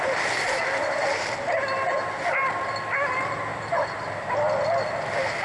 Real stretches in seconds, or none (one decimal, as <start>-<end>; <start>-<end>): 0.0-5.4